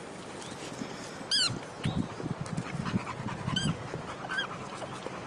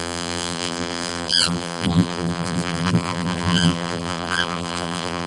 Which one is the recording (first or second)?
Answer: first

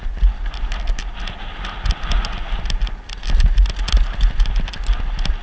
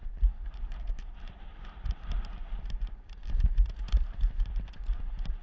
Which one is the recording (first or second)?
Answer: first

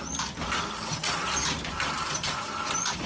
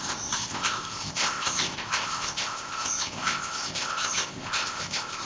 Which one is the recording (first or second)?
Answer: first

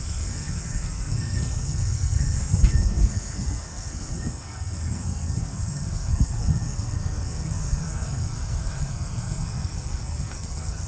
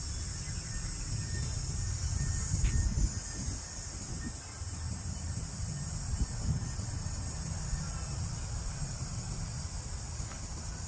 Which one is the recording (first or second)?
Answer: second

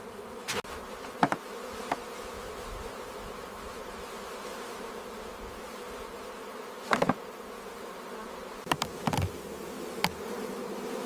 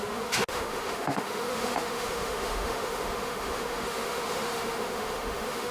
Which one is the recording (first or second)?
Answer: first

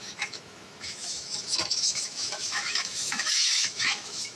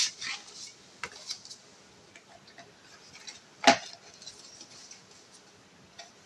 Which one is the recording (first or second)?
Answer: second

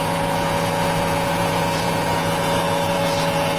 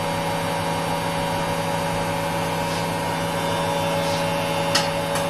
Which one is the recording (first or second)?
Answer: second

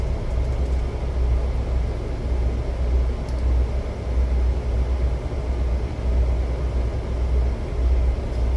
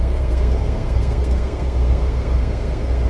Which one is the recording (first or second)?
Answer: first